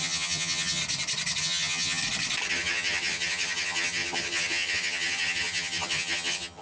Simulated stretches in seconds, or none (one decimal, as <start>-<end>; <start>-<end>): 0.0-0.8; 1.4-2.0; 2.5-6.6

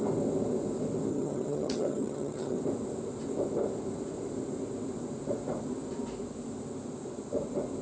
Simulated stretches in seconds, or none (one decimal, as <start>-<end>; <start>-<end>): 1.1-2.6

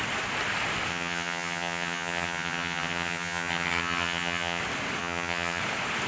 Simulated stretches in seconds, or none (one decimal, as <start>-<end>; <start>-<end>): 0.9-4.6; 5.0-5.6